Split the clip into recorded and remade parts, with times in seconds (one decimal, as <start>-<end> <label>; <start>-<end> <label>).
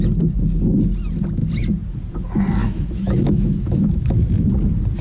0.0-2.6 recorded; 2.6-4.5 remade; 4.5-5.0 recorded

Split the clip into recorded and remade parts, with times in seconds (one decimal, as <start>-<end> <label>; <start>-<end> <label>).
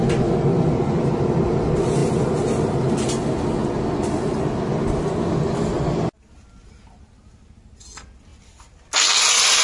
0.0-9.6 recorded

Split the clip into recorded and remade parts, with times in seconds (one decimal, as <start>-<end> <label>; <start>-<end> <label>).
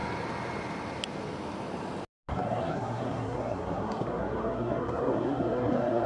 0.0-2.3 recorded; 2.3-6.1 remade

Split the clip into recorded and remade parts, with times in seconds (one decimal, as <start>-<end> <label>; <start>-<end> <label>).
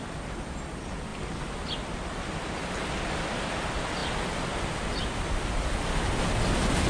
0.0-6.9 recorded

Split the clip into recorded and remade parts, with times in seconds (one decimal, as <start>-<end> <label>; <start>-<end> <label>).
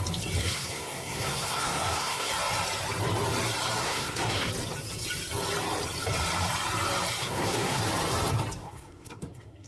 0.0-0.4 recorded; 0.4-2.3 remade; 2.3-3.8 recorded; 3.8-4.5 remade; 4.5-7.2 recorded; 7.2-7.8 remade; 7.8-8.6 recorded; 8.6-9.7 remade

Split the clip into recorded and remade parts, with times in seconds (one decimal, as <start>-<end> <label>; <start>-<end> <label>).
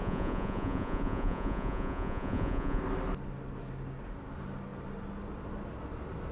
0.0-2.8 remade; 2.8-6.3 recorded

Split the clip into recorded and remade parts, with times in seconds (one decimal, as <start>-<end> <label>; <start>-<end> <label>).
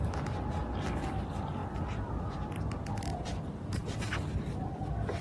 0.0-3.1 recorded; 3.1-5.2 remade